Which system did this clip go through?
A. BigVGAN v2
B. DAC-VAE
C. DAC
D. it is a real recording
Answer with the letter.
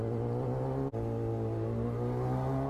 D